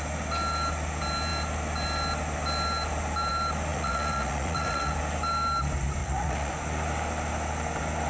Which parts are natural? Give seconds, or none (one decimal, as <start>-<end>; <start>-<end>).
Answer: 0.0-3.7; 4.9-6.0; 6.5-8.1